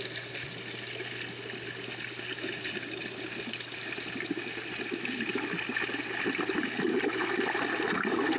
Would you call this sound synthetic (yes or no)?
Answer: no